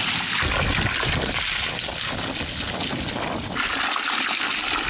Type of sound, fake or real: real